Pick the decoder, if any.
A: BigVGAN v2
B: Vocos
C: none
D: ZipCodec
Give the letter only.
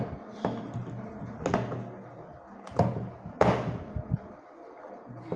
C